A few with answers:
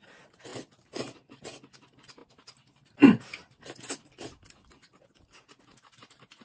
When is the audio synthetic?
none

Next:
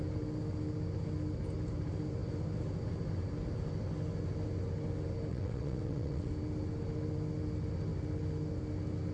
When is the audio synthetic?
5.3-6.3 (vocoder, WaveNeXt)

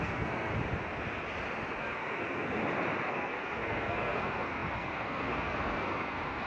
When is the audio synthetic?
0.0-0.5 (codec, SNAC); 1.8-2.6; 3.1-6.5

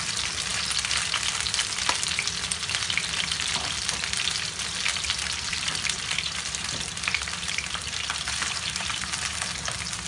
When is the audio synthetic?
0.0-0.5 (vocoder, BigVGAN v2); 2.6-10.1

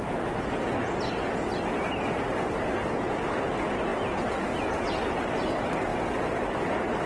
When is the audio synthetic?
2.8-3.4 (vocoder, BigVGAN v2); 3.9-4.9

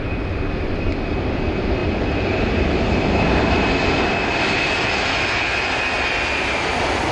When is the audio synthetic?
none

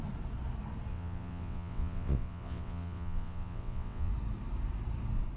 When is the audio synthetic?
0.9-4.1 (vocoder, WaveNeXt)

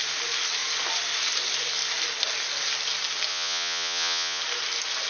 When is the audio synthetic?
3.3-4.4 (vocoder, Vocos)